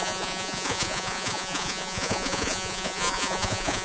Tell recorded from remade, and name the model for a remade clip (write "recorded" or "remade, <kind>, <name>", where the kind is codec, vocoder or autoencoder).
remade, vocoder, Vocos